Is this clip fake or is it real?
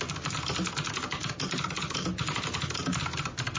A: real